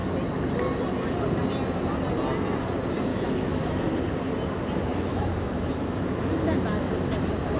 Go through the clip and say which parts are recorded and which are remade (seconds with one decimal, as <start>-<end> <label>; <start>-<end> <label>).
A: 0.0-3.1 recorded; 3.1-3.8 remade; 3.8-4.9 recorded; 4.9-6.3 remade; 6.3-7.6 recorded